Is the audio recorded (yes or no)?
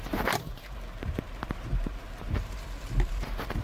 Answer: no